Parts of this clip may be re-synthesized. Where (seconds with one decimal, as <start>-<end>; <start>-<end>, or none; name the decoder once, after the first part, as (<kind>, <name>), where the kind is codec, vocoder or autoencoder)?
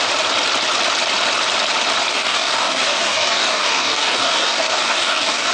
2.1-5.5 (codec, DAC)